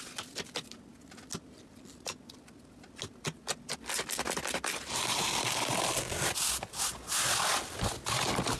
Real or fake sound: real